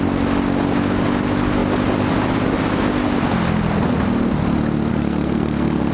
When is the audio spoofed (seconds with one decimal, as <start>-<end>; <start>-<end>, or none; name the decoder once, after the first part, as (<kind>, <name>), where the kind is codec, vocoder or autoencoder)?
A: 4.9-5.9 (codec, SNAC)